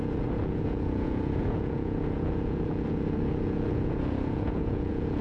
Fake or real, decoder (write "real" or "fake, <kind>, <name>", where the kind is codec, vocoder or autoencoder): fake, vocoder, Vocos